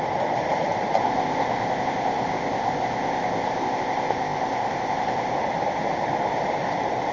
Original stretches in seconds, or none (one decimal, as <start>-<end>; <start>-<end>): 0.0-1.0; 5.3-7.1